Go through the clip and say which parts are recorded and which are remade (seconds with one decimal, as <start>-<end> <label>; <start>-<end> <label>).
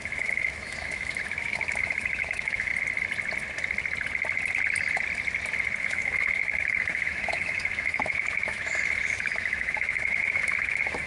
0.0-2.7 remade; 2.7-5.8 recorded; 5.8-11.1 remade